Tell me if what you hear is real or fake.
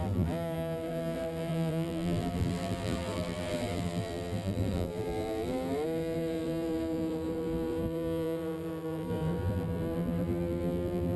fake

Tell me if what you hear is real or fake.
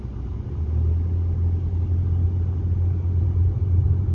real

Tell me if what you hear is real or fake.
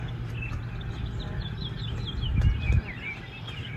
real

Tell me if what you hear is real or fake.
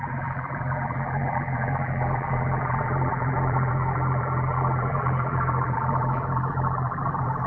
fake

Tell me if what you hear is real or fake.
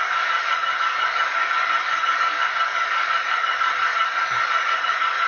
fake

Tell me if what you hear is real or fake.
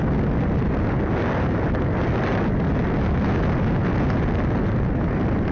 real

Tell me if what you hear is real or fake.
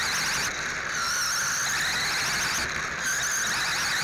real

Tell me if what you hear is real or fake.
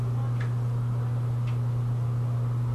real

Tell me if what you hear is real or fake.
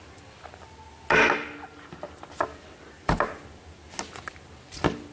real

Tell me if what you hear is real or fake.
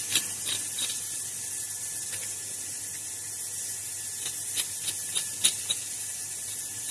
real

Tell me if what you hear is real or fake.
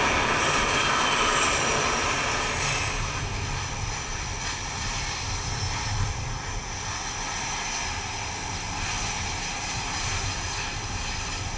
real